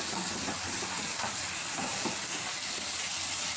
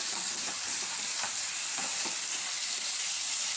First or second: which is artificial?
second